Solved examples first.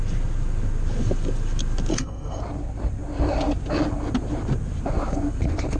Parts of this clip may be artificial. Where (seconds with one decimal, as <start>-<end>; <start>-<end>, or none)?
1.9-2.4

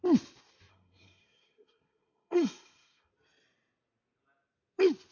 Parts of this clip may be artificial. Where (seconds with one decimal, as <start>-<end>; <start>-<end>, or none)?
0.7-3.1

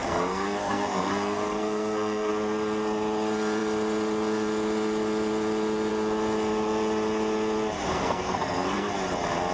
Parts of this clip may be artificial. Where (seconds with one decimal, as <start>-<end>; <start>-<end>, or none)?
0.0-2.3; 7.9-8.9

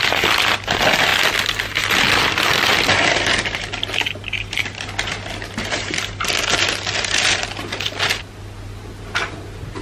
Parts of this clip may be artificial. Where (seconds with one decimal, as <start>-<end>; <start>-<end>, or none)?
none